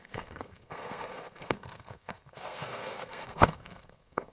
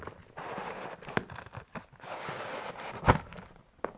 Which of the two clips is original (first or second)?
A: second